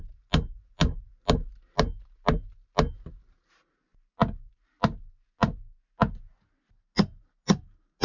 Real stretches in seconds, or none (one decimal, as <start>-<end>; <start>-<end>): 0.0-8.0

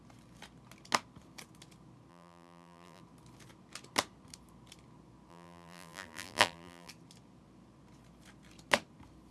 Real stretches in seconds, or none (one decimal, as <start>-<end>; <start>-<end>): 0.0-2.1; 3.0-5.3; 6.9-9.3

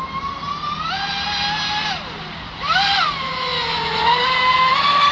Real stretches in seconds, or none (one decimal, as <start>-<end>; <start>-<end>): 0.0-5.1

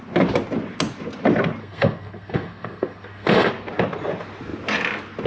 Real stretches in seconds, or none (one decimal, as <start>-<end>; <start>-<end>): 0.0-1.6; 3.5-5.3